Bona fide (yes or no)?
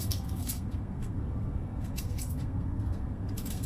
no